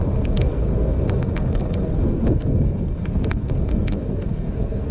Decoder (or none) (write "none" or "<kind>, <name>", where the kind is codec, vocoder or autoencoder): codec, SNAC